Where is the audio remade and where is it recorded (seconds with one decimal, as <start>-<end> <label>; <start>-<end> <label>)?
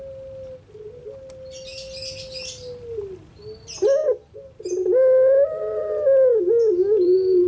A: 0.0-4.0 recorded; 4.0-4.5 remade; 4.5-6.3 recorded; 6.3-7.5 remade